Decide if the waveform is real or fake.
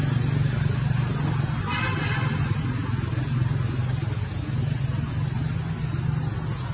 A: real